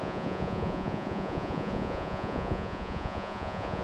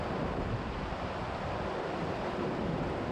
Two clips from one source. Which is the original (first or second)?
second